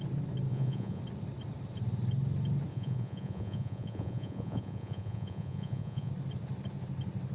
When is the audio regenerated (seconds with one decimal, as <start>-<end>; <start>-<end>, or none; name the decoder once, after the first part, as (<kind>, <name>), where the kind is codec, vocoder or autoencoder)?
0.5-1.0 (vocoder, Vocos); 2.7-6.1